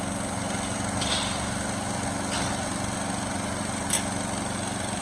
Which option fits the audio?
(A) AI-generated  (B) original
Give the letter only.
B